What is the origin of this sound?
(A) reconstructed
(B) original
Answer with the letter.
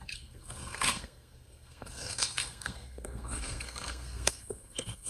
A